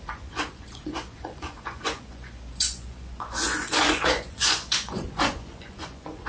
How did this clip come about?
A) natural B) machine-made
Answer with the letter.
B